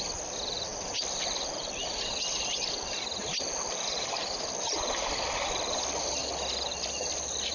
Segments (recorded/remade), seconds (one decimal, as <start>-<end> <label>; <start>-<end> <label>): 0.0-0.7 remade; 0.7-4.6 recorded; 4.6-7.5 remade